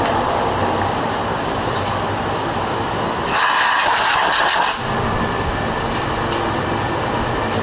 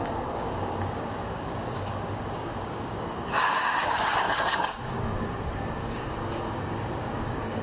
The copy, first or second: second